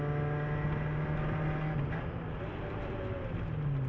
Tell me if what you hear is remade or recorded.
recorded